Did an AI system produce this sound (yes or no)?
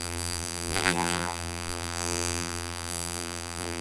yes